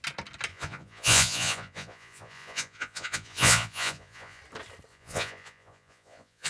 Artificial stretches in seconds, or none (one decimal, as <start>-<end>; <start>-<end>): 0.5-4.4; 4.9-6.5